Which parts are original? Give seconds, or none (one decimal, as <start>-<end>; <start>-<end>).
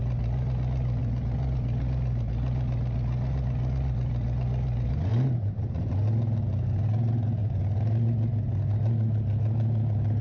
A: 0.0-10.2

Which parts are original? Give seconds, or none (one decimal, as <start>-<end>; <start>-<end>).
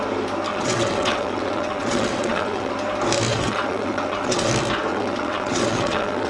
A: 0.0-0.5; 2.7-3.3; 4.5-4.9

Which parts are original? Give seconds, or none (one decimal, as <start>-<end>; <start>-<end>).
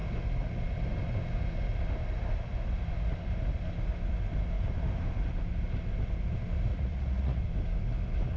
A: 0.0-6.7; 7.4-8.4